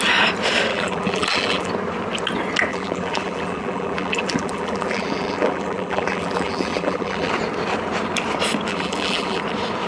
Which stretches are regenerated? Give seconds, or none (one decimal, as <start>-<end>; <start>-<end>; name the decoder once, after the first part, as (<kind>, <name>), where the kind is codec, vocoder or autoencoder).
0.7-1.7 (vocoder, BigVGAN v2); 2.7-7.3; 8.7-9.4